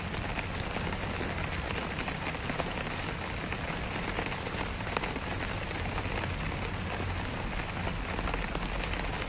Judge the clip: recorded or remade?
recorded